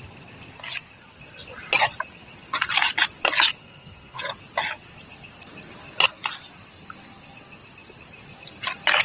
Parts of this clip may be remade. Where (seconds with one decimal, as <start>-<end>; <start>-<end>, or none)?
3.6-4.2